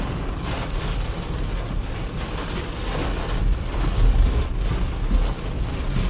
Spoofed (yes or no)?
no